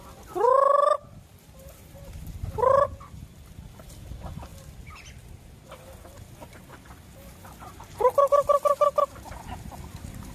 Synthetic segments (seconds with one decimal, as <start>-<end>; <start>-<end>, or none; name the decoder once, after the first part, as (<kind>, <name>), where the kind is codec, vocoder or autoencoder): 4.5-5.4 (vocoder, BigVGAN v2)